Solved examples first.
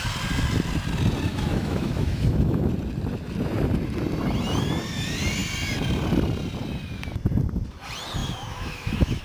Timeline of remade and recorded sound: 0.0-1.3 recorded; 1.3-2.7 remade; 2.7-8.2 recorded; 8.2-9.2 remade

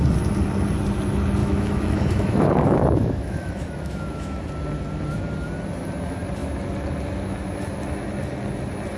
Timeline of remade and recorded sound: 0.0-1.4 recorded; 1.4-4.4 remade; 4.4-9.0 recorded

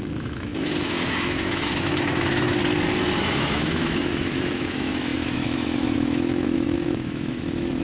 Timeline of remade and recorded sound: 0.0-2.6 remade; 2.6-3.2 recorded; 3.2-7.8 remade

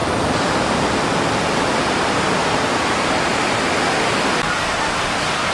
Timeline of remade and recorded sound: 0.0-5.5 recorded

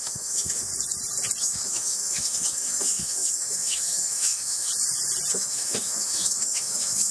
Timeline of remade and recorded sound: 0.0-0.7 remade; 0.7-1.4 recorded; 1.4-4.7 remade; 4.7-5.3 recorded; 5.3-7.1 remade

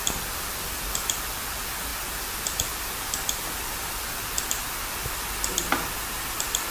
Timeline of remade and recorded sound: 0.0-6.7 recorded

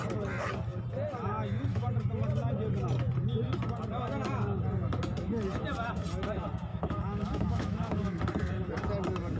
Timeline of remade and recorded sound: 0.0-6.7 recorded; 6.7-8.2 remade; 8.2-9.4 recorded